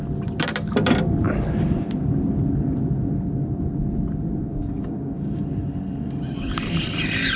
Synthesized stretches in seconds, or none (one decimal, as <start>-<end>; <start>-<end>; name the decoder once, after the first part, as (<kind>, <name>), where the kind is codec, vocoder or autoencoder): 4.5-5.4 (codec, DAC)

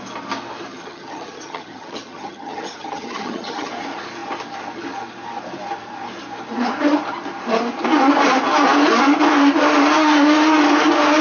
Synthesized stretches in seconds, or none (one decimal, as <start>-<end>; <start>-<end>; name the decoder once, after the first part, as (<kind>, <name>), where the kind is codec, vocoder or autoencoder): 0.7-3.7 (vocoder, HiFi-GAN)

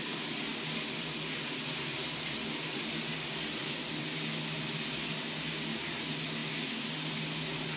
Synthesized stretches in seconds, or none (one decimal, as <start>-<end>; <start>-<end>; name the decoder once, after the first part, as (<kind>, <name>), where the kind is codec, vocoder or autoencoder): none

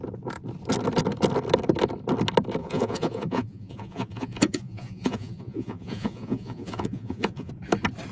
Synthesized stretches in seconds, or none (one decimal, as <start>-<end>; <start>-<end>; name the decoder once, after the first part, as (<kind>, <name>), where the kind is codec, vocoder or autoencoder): 2.6-7.5 (vocoder, Vocos)

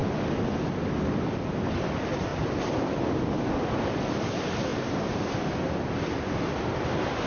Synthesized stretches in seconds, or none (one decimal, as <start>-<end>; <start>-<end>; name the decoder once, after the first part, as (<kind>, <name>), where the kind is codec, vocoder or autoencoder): 2.3-3.4 (vocoder, BigVGAN v2); 4.7-5.5

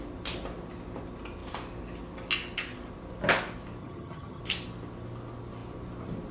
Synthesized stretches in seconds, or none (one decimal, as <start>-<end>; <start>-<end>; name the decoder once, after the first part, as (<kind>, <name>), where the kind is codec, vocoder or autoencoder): 3.8-4.4 (vocoder, HiFi-GAN)